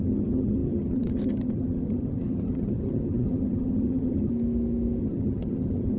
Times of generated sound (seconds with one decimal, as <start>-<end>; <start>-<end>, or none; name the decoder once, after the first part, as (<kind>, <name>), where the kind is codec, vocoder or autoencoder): 0.0-4.3 (vocoder, HiFi-GAN); 5.0-6.0